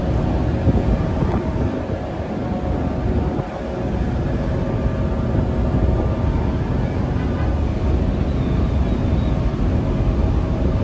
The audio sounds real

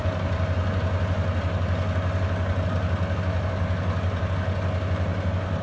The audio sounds real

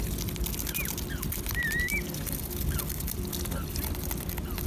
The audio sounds real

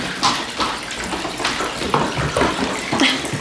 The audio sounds real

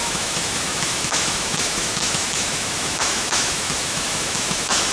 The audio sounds fake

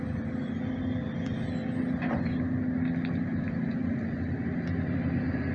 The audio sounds real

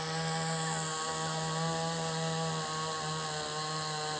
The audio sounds real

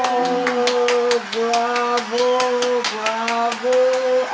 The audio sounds real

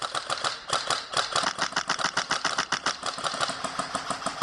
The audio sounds real